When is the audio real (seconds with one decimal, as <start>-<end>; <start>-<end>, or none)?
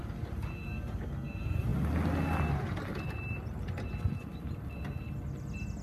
0.0-5.8